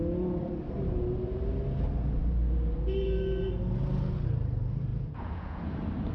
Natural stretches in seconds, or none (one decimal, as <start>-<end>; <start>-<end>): 0.0-4.9; 5.6-6.1